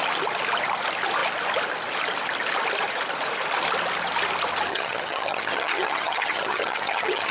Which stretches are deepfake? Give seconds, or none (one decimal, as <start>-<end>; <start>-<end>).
4.7-7.3